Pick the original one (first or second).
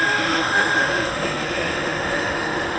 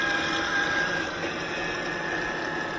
second